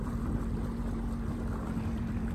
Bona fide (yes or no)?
yes